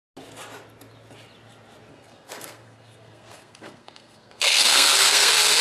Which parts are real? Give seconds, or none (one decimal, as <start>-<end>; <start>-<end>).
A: 0.0-1.9